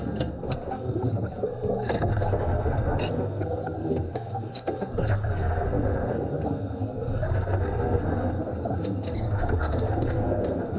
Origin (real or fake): fake